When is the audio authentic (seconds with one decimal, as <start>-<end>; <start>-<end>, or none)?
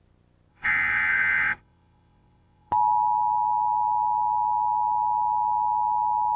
0.0-0.5; 2.7-6.4